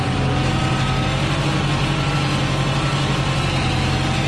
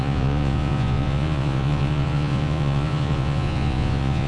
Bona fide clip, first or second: first